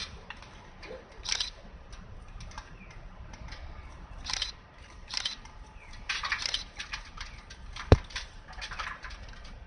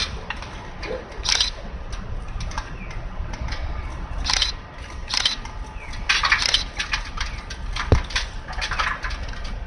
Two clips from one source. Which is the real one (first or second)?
second